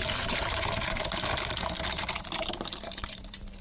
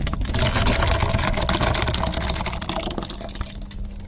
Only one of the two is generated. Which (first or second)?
first